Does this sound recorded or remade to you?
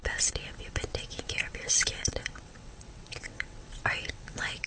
remade